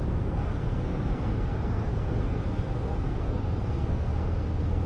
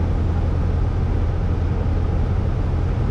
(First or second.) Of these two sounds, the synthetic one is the first